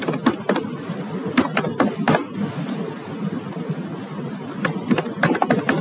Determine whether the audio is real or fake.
real